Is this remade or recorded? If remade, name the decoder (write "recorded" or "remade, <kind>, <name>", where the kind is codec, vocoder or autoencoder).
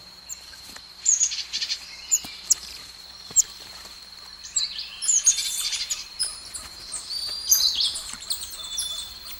remade, vocoder, BigVGAN v2